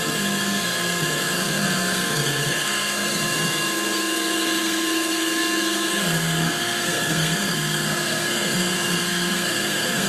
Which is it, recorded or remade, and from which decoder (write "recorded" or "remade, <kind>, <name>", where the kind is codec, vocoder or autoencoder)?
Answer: remade, codec, SNAC